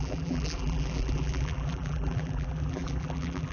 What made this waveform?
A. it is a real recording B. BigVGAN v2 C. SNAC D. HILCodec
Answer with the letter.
B